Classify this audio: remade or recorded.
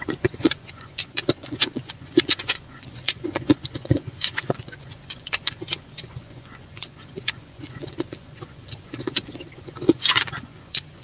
remade